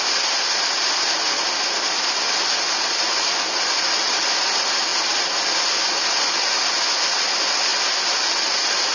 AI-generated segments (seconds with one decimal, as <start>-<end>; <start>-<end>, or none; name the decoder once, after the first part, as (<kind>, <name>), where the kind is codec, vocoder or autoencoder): none